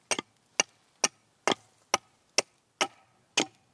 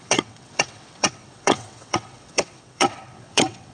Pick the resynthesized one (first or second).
second